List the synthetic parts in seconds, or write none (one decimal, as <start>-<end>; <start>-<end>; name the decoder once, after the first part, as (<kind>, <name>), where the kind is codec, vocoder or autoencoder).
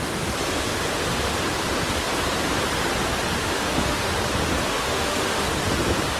3.4-4.1 (autoencoder, DAC-VAE); 4.7-5.5